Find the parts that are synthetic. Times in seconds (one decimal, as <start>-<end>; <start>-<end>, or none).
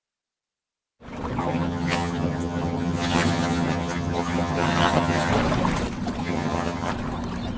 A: 1.4-5.3; 6.2-6.9